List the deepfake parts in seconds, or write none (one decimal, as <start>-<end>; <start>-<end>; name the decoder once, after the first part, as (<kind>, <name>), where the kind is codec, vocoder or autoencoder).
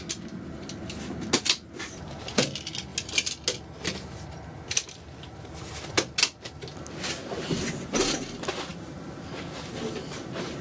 8.7-9.4 (vocoder, BigVGAN v2)